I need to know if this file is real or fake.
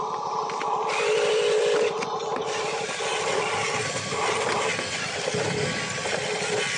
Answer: real